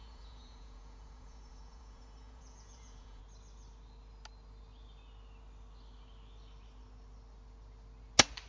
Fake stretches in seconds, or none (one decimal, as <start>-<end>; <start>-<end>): 0.0-3.2